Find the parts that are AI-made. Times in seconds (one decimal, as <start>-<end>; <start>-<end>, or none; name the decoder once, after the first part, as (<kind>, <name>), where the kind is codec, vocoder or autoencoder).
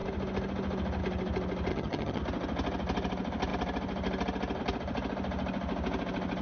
1.7-2.2 (vocoder, HiFi-GAN)